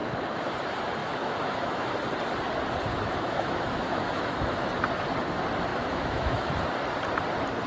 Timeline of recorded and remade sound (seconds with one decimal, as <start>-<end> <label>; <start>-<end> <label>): 0.0-0.5 remade; 0.5-1.0 recorded; 1.0-1.9 remade; 1.9-2.9 recorded; 2.9-4.7 remade; 4.7-5.7 recorded; 5.7-6.6 remade; 6.6-7.7 recorded

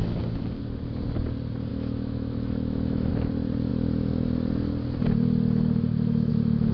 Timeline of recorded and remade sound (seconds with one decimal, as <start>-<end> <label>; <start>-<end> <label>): 0.0-1.7 recorded; 1.7-3.1 remade; 3.1-6.7 recorded

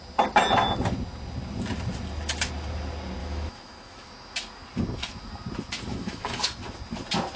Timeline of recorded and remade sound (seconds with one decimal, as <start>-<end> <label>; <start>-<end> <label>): 0.0-3.2 recorded; 3.2-4.1 remade; 4.1-5.9 recorded; 5.9-6.5 remade; 6.5-7.4 recorded

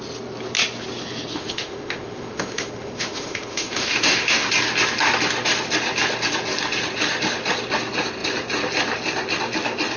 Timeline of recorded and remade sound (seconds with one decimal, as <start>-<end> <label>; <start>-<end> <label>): 0.0-1.3 recorded; 1.3-4.5 remade; 4.5-10.0 recorded